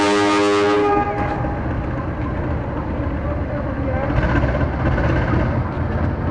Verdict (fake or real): real